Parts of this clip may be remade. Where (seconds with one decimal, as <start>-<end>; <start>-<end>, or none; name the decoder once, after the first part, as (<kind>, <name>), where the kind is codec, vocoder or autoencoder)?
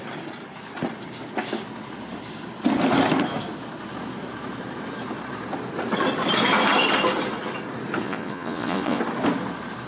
8.0-9.0 (vocoder, Vocos)